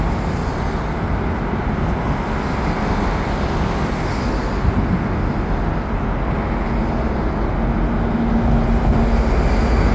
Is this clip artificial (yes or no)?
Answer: no